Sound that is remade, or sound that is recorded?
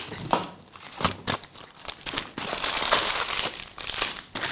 recorded